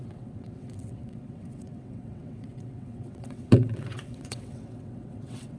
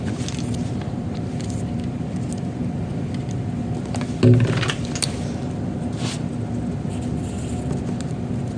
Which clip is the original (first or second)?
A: second